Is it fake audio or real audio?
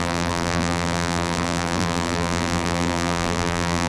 fake